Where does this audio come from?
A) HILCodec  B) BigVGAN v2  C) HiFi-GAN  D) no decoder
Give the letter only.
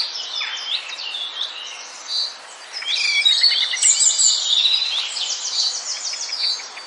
D